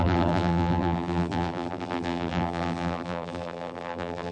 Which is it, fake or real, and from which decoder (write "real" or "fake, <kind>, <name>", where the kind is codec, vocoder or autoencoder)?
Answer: fake, vocoder, BigVGAN v2